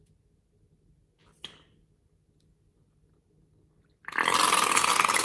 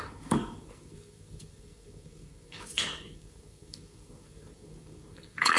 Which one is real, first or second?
first